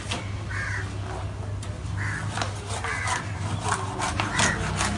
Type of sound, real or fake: real